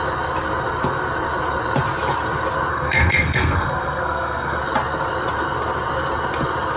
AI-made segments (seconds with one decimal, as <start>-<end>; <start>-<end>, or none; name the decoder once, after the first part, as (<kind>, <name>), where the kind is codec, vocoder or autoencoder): 2.7-4.6 (codec, SNAC)